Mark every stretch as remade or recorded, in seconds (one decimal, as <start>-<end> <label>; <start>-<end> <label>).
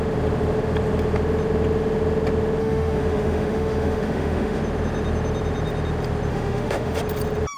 0.0-2.6 recorded; 2.6-4.6 remade; 4.6-6.3 recorded; 6.3-7.0 remade; 7.0-7.6 recorded